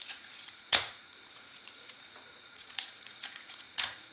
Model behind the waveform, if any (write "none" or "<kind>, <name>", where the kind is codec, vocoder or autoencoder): vocoder, Vocos